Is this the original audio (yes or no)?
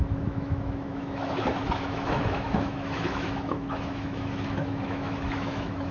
no